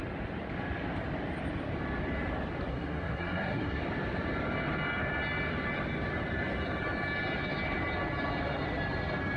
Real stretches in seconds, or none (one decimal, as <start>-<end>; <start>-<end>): 0.0-2.7; 3.8-9.4